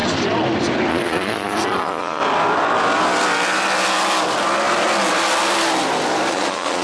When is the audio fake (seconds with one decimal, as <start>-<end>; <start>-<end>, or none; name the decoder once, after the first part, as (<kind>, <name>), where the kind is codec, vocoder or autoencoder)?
0.9-2.2 (vocoder, Vocos); 6.3-6.8